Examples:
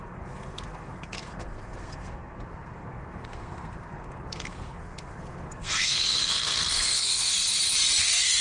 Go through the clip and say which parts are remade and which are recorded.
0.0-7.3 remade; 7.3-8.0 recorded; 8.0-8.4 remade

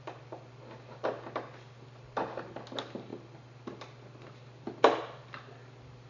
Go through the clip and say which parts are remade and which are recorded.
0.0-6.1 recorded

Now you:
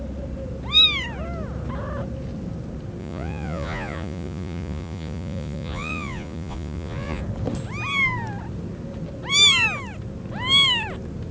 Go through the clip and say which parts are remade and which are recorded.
0.0-3.0 recorded; 3.0-7.2 remade; 7.2-11.3 recorded

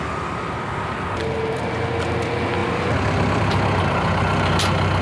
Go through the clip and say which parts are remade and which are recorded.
0.0-2.6 recorded; 2.6-3.4 remade; 3.4-5.0 recorded

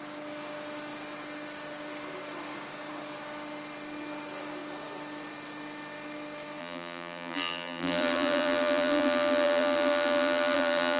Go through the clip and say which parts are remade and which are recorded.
0.0-6.6 recorded; 6.6-11.0 remade

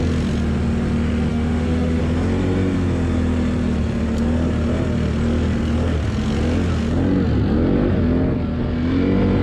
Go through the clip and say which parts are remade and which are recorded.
0.0-1.3 recorded; 1.3-2.0 remade; 2.0-9.4 recorded

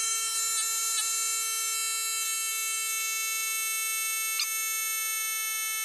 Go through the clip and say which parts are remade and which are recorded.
0.0-5.8 recorded

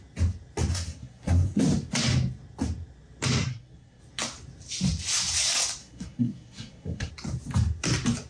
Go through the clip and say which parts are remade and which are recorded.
0.0-0.7 recorded; 0.7-1.6 remade; 1.6-3.4 recorded; 3.4-4.0 remade; 4.0-5.8 recorded; 5.8-7.1 remade; 7.1-8.3 recorded